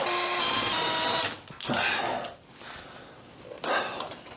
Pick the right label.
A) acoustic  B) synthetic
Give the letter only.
A